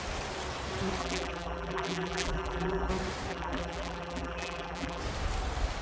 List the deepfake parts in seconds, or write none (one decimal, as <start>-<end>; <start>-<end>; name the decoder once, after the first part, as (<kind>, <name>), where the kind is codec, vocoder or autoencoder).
1.0-2.9 (vocoder, BigVGAN v2); 3.3-5.0